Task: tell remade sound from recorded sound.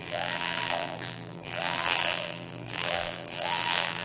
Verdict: remade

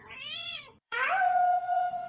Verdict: remade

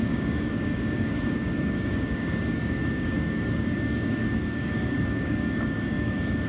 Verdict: remade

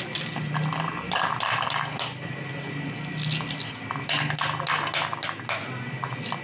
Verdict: recorded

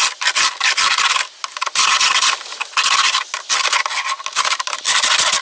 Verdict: recorded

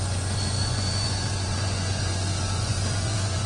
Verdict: remade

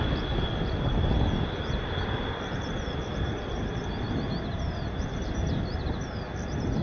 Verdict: recorded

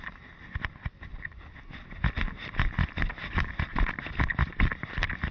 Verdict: recorded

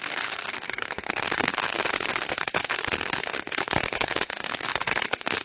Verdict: remade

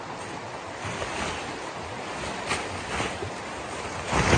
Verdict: recorded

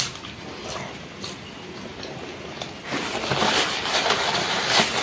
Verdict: recorded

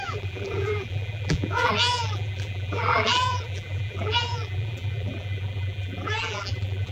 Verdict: remade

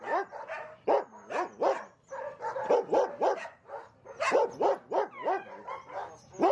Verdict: recorded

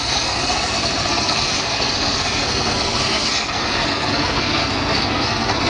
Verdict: remade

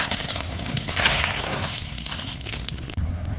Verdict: remade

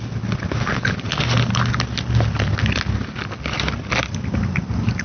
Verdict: recorded